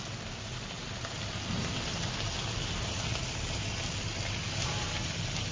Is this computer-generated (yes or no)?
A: no